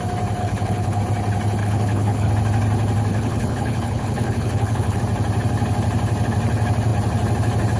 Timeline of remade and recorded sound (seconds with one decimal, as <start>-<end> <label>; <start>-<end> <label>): 0.0-0.4 recorded; 0.4-1.0 remade; 1.0-1.6 recorded; 1.6-2.3 remade; 2.3-3.1 recorded; 3.1-5.0 remade; 5.0-7.8 recorded